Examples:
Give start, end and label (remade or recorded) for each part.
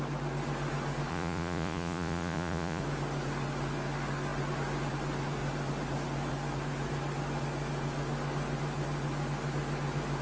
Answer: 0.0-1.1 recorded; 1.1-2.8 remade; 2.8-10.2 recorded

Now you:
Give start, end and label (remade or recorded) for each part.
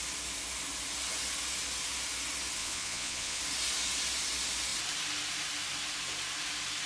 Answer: 0.0-2.6 recorded; 2.6-3.4 remade; 3.4-6.9 recorded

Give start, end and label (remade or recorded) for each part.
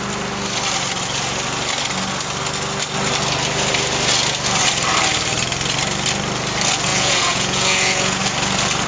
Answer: 0.0-6.9 recorded; 6.9-8.2 remade; 8.2-8.9 recorded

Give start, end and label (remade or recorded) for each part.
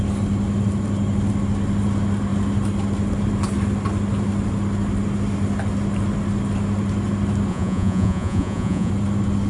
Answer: 0.0-7.5 recorded; 7.5-8.9 remade; 8.9-9.5 recorded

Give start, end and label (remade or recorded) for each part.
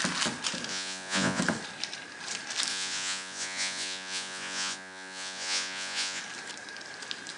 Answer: 0.0-0.7 recorded; 0.7-1.4 remade; 1.4-2.7 recorded; 2.7-6.2 remade; 6.2-7.4 recorded